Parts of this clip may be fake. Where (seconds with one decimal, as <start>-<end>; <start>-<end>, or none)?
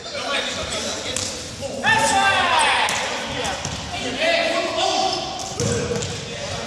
none